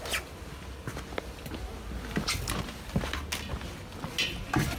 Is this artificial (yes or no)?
no